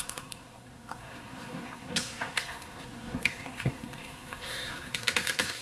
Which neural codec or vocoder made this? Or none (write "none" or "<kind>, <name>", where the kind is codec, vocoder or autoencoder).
codec, SNAC